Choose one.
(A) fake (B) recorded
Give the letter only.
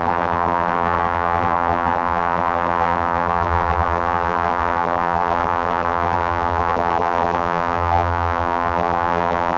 A